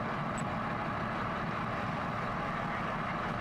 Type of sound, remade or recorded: recorded